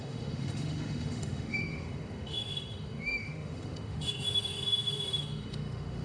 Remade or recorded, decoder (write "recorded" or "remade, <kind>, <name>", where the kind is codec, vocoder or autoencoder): remade, autoencoder, DAC-VAE